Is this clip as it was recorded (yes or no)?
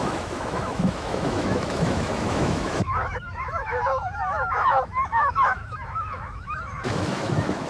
no